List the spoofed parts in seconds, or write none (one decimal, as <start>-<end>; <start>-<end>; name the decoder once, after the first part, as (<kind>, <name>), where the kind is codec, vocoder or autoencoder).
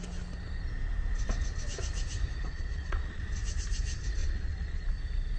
2.4-3.2 (vocoder, Vocos); 4.2-4.9